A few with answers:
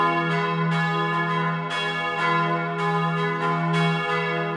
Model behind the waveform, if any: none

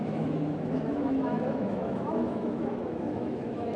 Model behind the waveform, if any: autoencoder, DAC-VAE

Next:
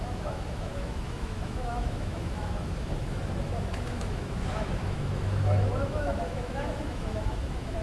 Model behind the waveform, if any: autoencoder, DAC-VAE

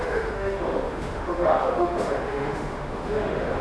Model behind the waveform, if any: autoencoder, DAC-VAE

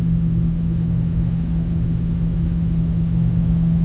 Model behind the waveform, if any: autoencoder, DAC-VAE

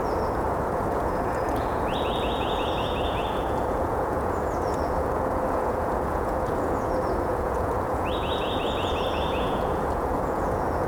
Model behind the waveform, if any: vocoder, Vocos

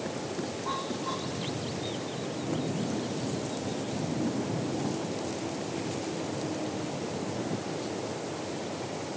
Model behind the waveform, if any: none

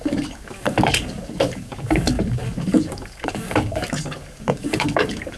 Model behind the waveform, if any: codec, DAC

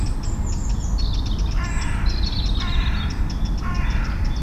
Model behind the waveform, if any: none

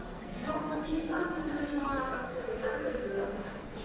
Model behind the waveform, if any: codec, SNAC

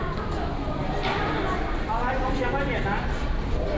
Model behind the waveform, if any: none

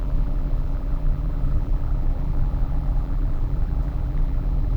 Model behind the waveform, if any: vocoder, BigVGAN v2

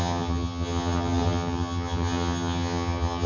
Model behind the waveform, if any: vocoder, HiFi-GAN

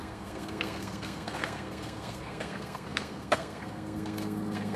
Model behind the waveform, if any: codec, SNAC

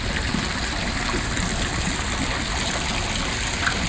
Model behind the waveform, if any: none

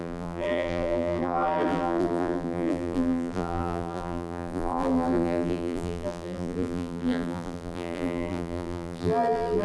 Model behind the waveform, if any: vocoder, BigVGAN v2